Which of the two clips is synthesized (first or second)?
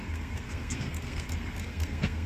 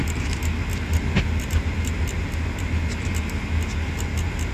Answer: first